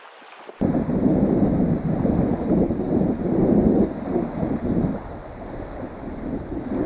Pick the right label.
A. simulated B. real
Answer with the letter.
B